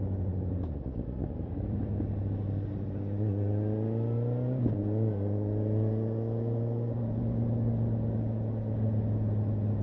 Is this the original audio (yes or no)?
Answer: yes